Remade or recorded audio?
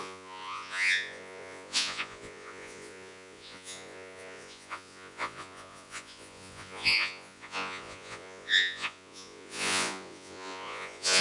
remade